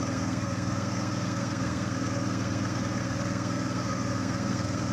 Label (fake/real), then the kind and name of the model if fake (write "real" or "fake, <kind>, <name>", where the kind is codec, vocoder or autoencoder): fake, codec, SNAC